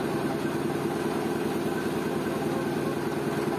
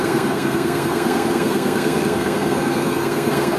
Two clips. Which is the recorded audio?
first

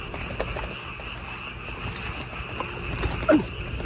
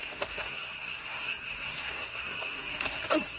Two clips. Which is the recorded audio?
first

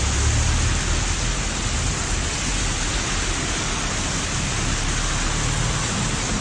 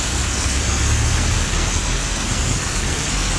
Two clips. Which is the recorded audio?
first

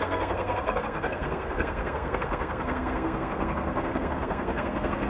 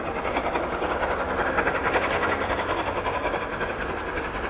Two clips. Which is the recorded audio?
second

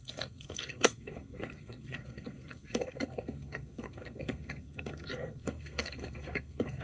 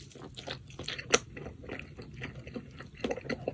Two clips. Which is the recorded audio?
second